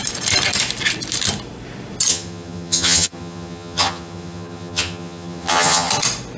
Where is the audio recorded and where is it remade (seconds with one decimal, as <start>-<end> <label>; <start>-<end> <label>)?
0.0-2.1 recorded; 2.1-5.9 remade; 5.9-6.4 recorded